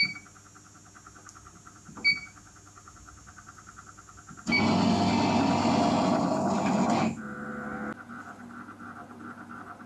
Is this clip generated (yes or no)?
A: no